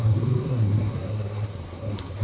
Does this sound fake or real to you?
fake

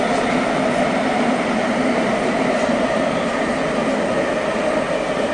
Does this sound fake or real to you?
real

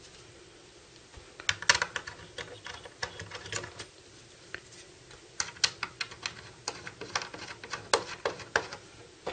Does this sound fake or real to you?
real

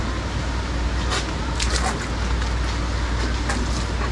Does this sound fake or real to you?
real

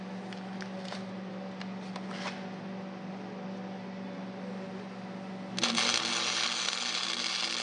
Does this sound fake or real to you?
real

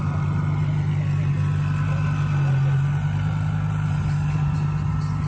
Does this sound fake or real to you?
real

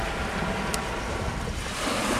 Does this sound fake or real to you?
real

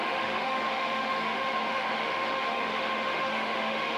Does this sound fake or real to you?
fake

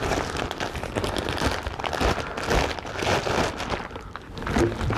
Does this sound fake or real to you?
real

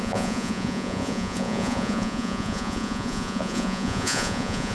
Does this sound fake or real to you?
fake